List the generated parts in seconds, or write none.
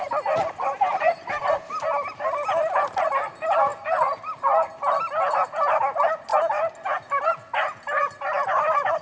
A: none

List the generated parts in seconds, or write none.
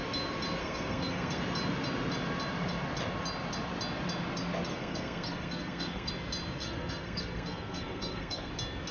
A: 0.6-1.4 (codec, SNAC); 4.7-6.1; 6.6-8.5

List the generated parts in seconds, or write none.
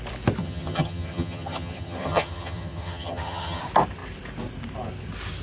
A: 0.4-3.6 (vocoder, HiFi-GAN)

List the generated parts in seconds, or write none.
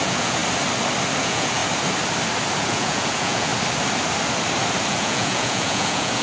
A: 0.0-0.4 (vocoder, Vocos); 1.2-1.6; 2.6-3.5; 4.9-6.2